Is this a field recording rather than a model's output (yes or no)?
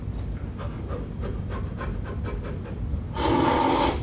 yes